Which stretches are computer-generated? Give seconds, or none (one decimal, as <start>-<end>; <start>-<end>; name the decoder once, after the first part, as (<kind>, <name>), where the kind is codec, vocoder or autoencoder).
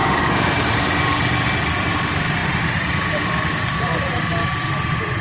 0.0-0.9 (vocoder, BigVGAN v2); 2.4-4.3